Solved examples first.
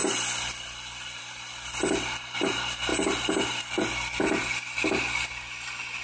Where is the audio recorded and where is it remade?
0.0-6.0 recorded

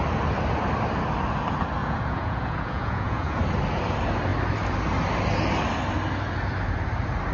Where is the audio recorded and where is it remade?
0.0-1.8 recorded; 1.8-3.4 remade; 3.4-7.3 recorded

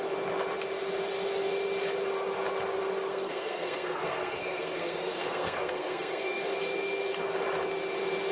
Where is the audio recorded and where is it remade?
0.0-3.1 recorded; 3.1-6.4 remade; 6.4-8.3 recorded

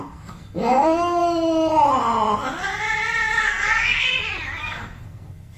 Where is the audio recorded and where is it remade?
0.0-1.2 remade; 1.2-3.4 recorded; 3.4-4.1 remade; 4.1-4.6 recorded; 4.6-5.6 remade

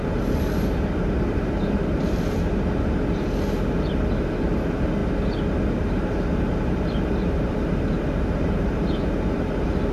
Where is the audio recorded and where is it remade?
0.0-5.0 remade; 5.0-5.8 recorded; 5.8-9.9 remade

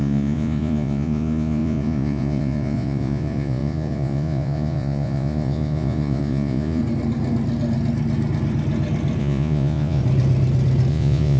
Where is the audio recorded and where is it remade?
0.0-6.8 remade; 6.8-9.2 recorded; 9.2-10.0 remade; 10.0-10.9 recorded; 10.9-11.4 remade

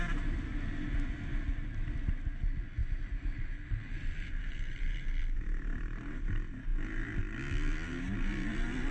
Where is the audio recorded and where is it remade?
0.0-2.8 recorded; 2.8-5.2 remade; 5.2-8.9 recorded

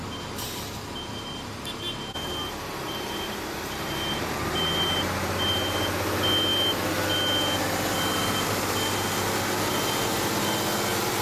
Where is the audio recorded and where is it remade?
0.0-2.8 recorded; 2.8-5.1 remade; 5.1-11.2 recorded